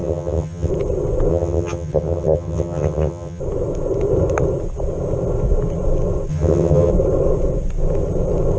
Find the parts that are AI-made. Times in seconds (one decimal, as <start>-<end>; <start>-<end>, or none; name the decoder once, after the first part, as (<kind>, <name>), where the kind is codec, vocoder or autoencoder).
0.0-0.7 (vocoder, HiFi-GAN); 1.3-3.4; 6.3-6.9